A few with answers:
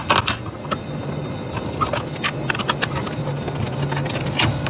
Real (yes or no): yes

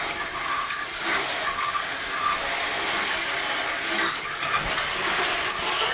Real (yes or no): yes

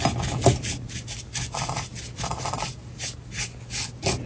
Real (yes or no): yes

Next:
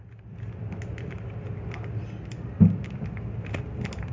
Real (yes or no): yes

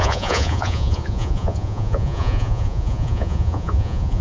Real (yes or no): no